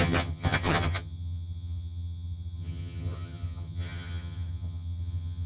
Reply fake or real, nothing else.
fake